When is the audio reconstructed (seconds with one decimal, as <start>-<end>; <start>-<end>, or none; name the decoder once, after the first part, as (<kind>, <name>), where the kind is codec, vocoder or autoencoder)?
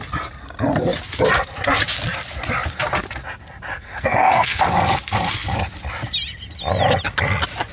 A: 3.7-4.7 (codec, SNAC)